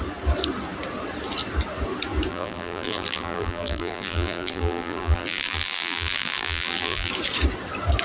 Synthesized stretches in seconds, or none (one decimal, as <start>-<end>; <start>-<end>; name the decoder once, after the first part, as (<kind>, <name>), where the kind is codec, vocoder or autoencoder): 2.3-7.1 (vocoder, BigVGAN v2)